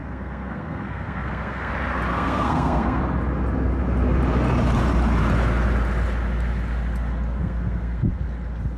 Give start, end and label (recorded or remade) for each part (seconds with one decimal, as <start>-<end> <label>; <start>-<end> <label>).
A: 0.0-1.7 remade; 1.7-2.1 recorded; 2.1-3.0 remade; 3.0-7.4 recorded; 7.4-8.1 remade; 8.1-8.8 recorded